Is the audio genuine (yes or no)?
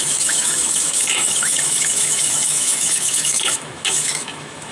no